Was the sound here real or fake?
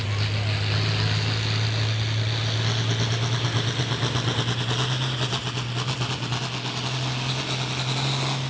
real